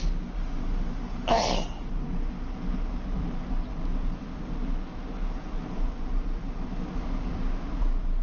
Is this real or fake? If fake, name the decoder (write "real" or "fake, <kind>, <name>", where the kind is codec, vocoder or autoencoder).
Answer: real